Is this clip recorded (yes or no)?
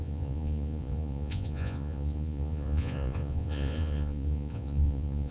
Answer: no